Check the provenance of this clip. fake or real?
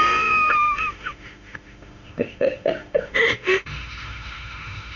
fake